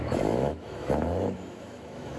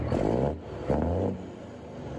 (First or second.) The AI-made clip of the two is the first